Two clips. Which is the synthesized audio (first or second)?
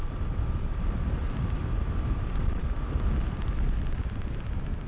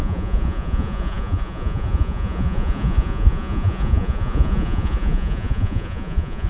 second